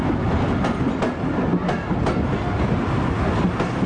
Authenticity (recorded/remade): recorded